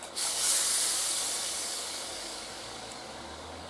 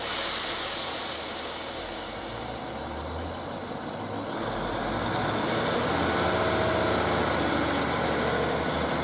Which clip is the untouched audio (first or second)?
second